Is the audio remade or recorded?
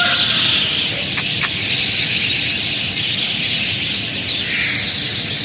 recorded